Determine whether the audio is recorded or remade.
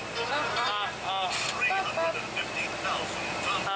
recorded